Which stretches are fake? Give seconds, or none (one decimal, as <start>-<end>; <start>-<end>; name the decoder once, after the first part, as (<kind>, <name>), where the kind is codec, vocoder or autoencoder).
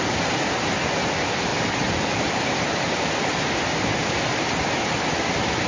1.5-3.1 (vocoder, BigVGAN v2)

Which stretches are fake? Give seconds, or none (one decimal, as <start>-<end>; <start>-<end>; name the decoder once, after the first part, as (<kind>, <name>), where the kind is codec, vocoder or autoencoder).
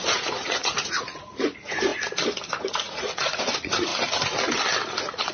0.0-1.9 (vocoder, Vocos); 2.5-3.9; 4.8-5.3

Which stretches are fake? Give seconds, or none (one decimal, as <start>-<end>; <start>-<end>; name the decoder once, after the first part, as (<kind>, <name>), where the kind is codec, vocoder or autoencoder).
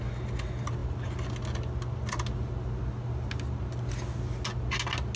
none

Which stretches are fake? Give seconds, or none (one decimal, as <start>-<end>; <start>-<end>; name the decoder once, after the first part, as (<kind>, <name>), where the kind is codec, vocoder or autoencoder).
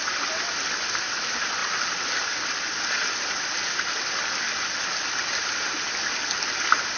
none